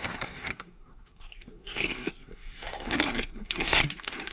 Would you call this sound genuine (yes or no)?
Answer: no